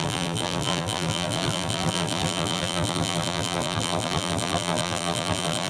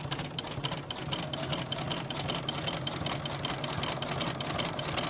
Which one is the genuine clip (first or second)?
second